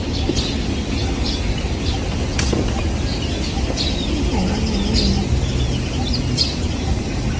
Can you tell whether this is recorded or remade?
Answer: recorded